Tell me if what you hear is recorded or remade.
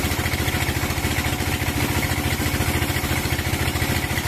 recorded